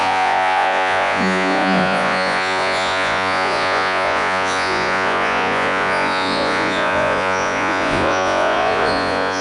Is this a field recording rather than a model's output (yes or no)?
no